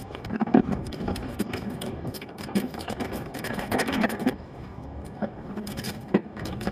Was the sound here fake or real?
fake